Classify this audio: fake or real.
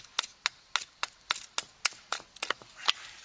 real